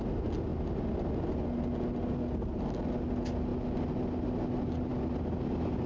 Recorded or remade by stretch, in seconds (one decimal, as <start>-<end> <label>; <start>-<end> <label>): 0.0-5.9 recorded